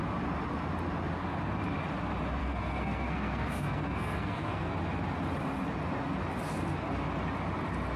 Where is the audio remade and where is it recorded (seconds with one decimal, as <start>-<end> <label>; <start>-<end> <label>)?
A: 0.0-2.4 recorded; 2.4-4.7 remade; 4.7-8.0 recorded